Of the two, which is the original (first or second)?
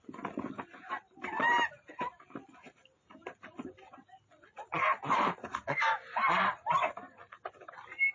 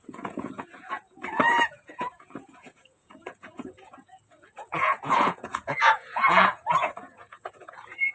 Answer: first